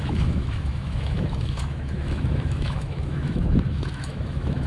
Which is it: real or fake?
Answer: fake